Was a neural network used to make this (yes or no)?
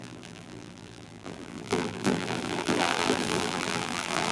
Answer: yes